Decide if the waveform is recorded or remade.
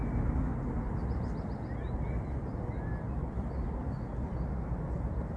recorded